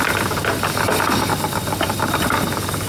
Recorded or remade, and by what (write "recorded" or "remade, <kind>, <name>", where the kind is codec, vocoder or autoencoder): recorded